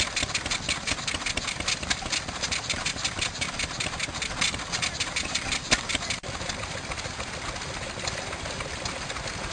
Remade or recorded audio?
recorded